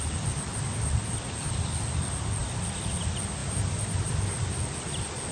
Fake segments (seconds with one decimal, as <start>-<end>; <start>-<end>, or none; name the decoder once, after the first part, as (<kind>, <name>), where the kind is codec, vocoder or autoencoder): 3.4-4.1 (vocoder, BigVGAN v2)

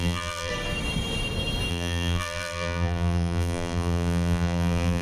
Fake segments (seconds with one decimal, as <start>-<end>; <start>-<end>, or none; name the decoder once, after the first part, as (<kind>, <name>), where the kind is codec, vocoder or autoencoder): 0.0-0.5 (vocoder, BigVGAN v2); 1.7-5.0

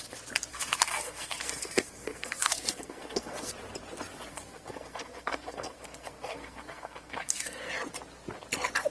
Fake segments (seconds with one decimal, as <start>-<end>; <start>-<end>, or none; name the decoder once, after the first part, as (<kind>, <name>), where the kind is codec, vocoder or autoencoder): 0.5-3.5 (codec, SNAC); 4.3-7.7

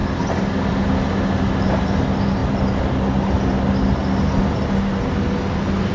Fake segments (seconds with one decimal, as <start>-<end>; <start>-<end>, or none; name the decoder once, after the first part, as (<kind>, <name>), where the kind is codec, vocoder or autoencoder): none

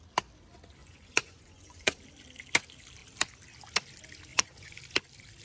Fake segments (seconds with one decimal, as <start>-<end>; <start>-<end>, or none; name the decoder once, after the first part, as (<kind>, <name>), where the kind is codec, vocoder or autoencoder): 0.8-2.0 (vocoder, Vocos); 4.3-4.8

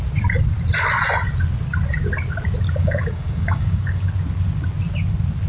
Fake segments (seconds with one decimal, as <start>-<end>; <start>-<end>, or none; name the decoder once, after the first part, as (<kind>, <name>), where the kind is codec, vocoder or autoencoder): 2.8-4.1 (codec, DAC)

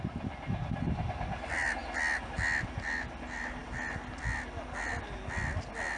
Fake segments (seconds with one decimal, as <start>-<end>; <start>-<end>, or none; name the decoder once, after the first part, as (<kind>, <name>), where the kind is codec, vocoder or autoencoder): none